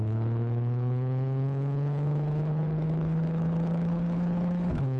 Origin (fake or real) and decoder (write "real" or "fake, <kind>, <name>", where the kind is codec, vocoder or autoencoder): fake, codec, HILCodec